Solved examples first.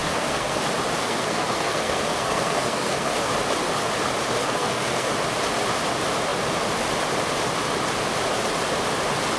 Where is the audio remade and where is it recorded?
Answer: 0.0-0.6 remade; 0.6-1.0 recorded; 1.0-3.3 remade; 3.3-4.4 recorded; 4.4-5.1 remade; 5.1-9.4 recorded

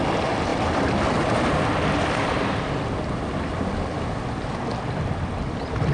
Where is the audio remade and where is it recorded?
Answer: 0.0-5.9 recorded

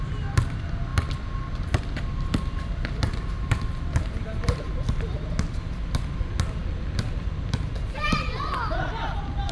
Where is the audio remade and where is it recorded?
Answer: 0.0-9.5 recorded